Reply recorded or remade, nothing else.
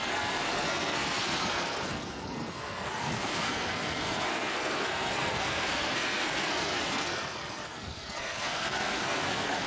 remade